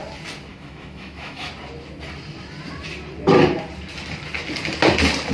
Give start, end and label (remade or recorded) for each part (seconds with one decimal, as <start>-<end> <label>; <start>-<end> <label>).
0.0-0.5 recorded; 0.5-1.5 remade; 1.5-5.3 recorded